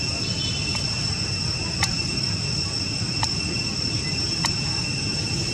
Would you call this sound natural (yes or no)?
yes